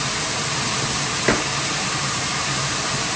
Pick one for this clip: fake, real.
fake